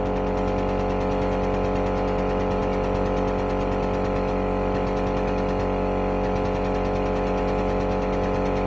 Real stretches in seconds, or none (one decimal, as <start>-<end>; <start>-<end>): 0.0-8.7